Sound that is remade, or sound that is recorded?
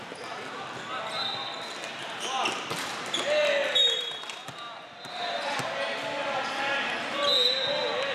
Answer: recorded